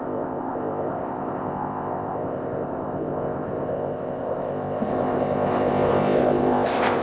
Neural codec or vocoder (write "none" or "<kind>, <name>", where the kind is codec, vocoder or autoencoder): codec, ZipCodec